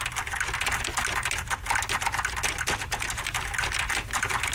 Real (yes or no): yes